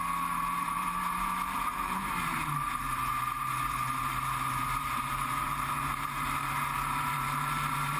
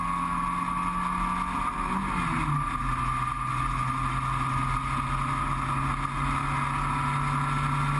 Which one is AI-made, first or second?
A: first